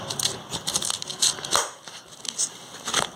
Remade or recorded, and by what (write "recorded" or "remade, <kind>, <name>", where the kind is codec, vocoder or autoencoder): recorded